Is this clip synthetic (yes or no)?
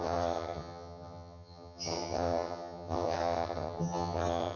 yes